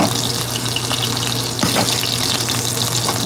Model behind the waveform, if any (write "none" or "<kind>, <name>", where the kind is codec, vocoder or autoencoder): none